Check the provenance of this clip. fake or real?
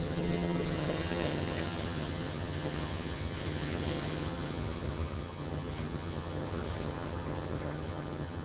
fake